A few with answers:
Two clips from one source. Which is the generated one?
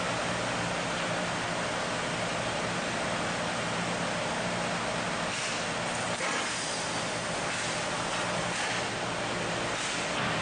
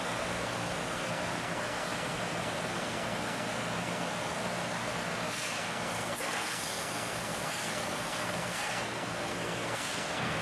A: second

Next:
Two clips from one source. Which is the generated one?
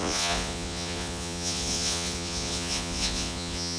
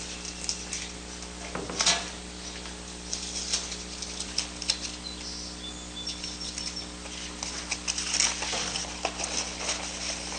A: first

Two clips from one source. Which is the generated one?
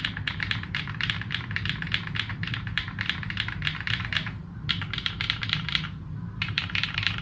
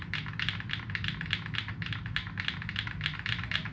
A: first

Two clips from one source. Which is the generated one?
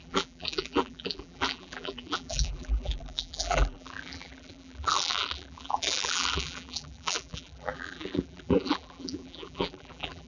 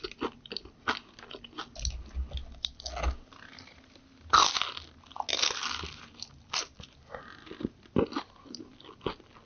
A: first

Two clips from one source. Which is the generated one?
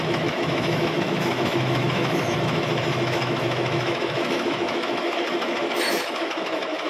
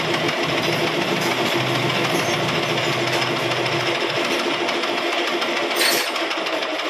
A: first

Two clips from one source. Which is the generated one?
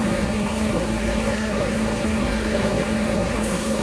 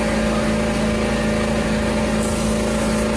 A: first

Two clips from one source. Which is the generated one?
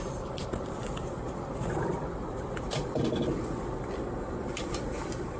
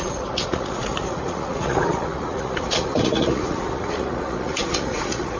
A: second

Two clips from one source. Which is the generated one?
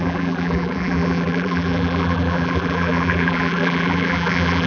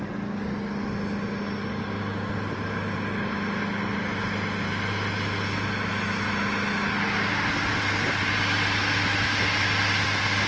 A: first